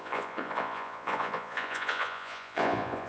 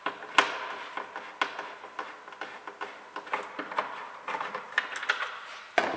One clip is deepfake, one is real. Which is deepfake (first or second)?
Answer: first